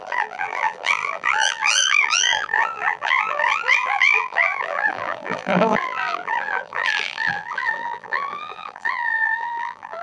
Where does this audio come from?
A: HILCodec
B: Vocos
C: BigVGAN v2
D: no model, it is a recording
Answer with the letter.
C